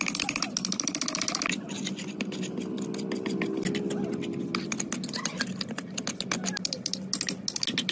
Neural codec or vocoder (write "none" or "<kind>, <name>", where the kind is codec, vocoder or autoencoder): none